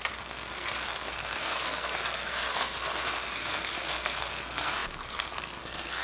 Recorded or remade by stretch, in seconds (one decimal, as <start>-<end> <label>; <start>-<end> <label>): 0.0-6.0 remade